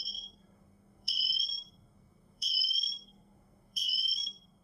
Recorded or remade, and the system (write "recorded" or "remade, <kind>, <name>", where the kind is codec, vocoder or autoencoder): remade, codec, SNAC